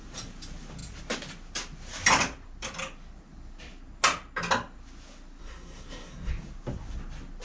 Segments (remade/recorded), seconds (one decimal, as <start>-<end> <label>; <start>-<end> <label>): 0.0-5.4 recorded; 5.4-6.3 remade; 6.3-7.4 recorded